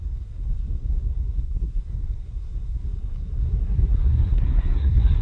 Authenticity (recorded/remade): remade